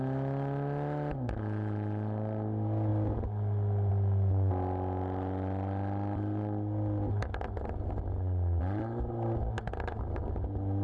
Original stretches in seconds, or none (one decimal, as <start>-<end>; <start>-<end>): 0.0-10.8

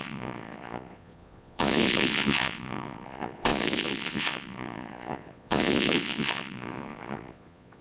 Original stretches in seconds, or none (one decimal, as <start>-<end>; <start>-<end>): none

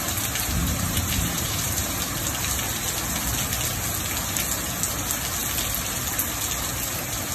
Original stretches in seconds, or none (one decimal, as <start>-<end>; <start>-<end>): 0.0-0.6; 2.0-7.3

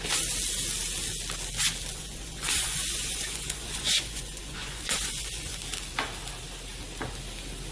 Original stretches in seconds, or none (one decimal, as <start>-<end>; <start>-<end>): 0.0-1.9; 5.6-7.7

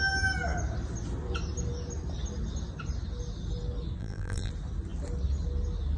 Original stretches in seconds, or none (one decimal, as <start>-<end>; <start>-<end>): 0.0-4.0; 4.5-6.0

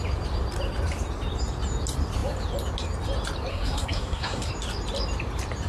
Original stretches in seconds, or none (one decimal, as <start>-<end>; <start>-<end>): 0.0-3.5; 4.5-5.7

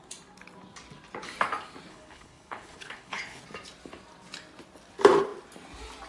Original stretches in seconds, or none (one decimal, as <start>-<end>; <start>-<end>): 0.0-1.9; 3.4-6.1

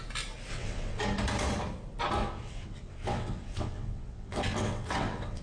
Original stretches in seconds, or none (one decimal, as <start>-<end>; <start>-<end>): 0.0-0.5; 1.0-2.2